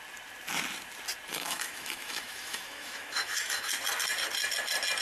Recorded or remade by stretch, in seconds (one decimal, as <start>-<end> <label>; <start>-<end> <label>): 0.0-1.3 recorded; 1.3-3.7 remade; 3.7-5.0 recorded